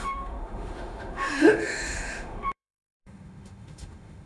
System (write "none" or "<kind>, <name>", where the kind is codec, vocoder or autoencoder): autoencoder, DAC-VAE